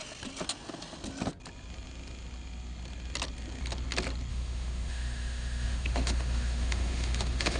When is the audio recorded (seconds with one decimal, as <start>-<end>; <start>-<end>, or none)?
0.0-4.3